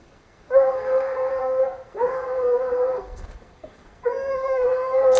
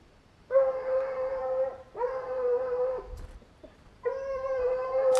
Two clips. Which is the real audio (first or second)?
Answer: second